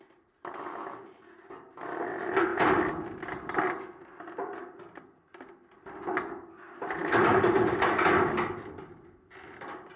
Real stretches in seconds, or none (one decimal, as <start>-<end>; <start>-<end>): 0.0-10.0